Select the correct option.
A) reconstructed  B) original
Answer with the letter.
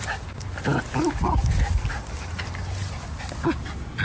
B